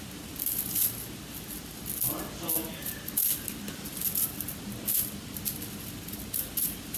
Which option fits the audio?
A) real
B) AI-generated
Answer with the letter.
A